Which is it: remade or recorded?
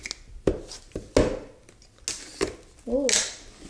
recorded